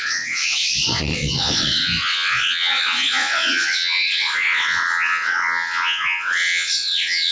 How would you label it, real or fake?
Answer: fake